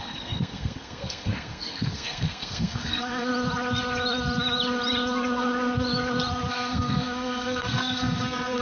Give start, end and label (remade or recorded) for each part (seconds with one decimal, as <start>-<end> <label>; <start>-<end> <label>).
0.0-3.3 remade; 3.3-6.5 recorded; 6.5-8.6 remade